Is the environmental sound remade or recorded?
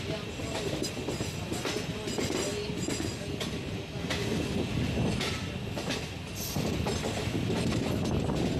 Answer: recorded